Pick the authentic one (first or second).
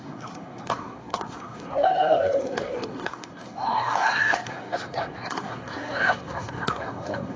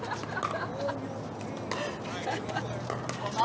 second